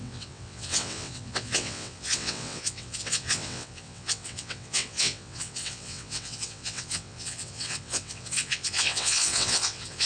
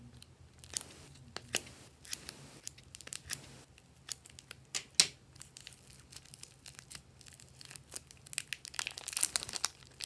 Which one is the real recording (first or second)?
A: second